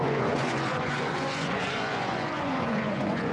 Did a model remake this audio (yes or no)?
yes